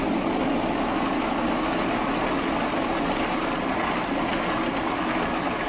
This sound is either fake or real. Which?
real